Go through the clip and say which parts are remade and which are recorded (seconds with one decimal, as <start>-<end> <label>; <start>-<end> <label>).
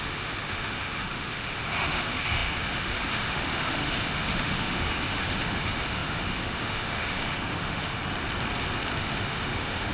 0.0-8.0 remade; 8.0-9.0 recorded; 9.0-9.9 remade